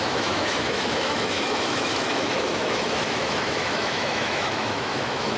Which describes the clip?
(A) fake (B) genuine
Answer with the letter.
A